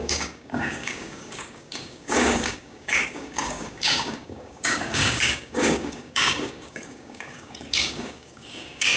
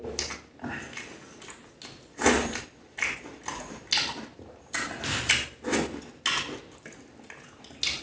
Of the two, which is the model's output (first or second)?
first